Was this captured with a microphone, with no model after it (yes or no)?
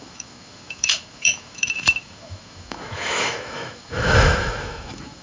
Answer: no